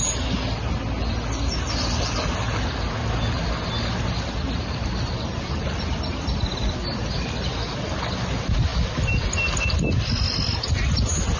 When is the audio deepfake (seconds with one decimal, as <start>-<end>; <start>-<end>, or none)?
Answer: none